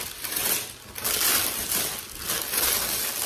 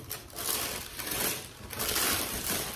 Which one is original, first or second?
first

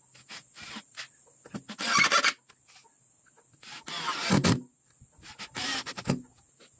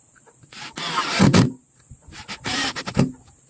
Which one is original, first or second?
first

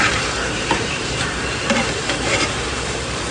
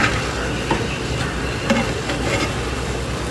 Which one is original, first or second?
second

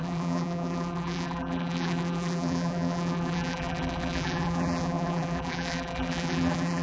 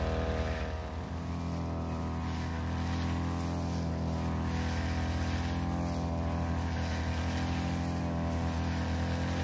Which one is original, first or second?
second